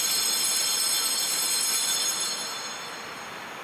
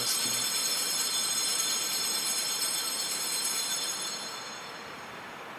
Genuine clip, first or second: first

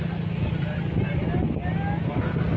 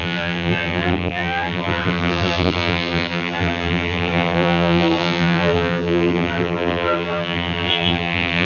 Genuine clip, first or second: first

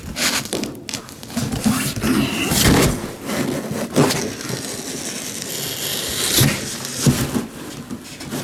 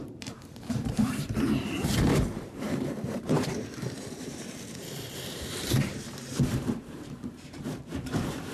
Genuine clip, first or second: first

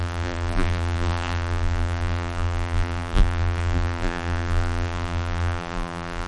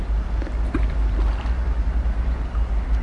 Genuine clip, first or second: second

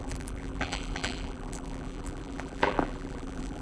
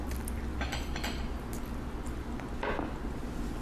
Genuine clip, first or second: second